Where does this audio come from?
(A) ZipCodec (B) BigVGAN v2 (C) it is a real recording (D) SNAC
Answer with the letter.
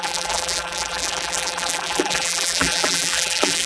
B